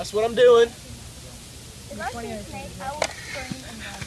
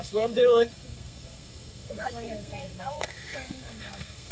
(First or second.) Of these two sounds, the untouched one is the first